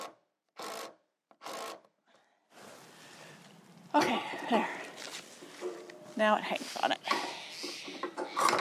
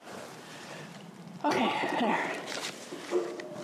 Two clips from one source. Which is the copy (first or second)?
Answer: second